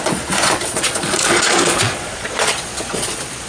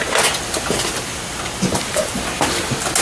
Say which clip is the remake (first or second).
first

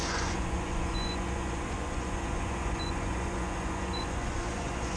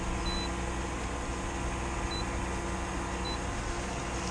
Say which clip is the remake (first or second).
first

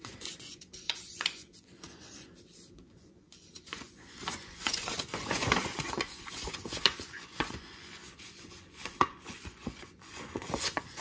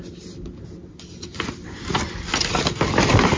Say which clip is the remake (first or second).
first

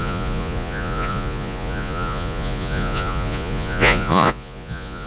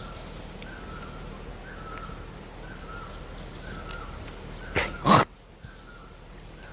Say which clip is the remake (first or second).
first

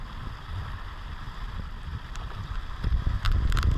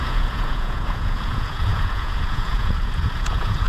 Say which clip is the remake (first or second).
second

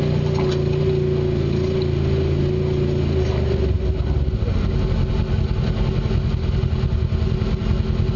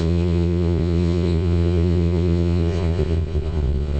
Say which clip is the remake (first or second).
second